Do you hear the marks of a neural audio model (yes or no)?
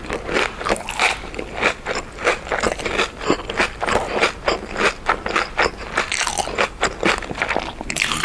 no